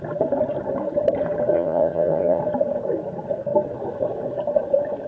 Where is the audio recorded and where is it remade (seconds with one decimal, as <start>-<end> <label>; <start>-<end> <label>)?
0.0-1.5 recorded; 1.5-2.4 remade; 2.4-5.1 recorded